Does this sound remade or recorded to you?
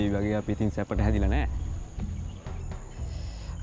recorded